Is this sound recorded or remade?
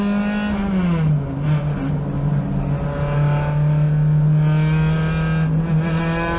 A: recorded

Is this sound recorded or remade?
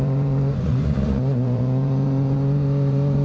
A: remade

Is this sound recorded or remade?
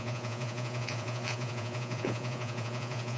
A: remade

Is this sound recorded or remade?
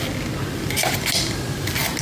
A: recorded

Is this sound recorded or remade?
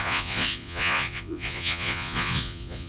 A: remade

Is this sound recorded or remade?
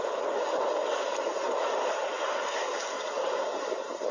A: recorded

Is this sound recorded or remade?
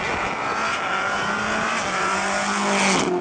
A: recorded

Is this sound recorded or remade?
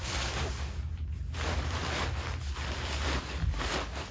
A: recorded